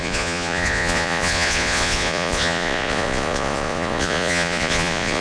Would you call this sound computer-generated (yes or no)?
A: yes